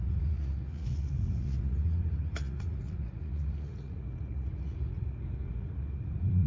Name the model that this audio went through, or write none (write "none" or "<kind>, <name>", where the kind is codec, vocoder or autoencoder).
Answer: vocoder, Vocos